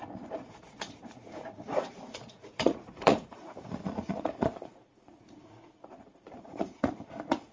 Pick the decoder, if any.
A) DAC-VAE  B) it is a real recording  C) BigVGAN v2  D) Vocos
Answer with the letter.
D